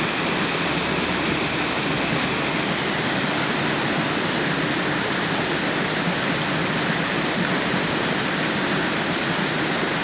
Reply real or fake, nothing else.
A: real